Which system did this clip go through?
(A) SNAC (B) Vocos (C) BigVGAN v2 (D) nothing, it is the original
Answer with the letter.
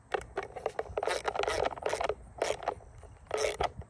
D